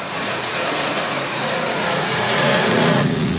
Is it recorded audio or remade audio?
remade